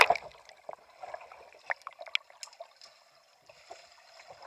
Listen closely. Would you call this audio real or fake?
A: real